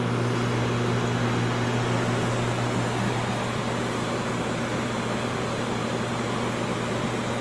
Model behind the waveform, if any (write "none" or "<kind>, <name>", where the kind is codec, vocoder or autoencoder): none